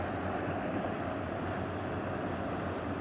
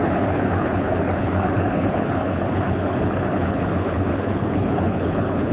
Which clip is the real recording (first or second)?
first